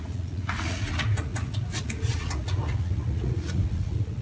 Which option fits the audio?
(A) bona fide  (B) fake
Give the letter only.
B